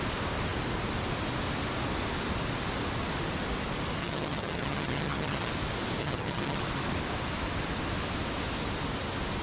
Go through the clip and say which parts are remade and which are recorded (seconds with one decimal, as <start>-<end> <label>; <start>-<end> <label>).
0.0-4.0 recorded; 4.0-5.5 remade; 5.5-6.0 recorded; 6.0-6.6 remade; 6.6-9.4 recorded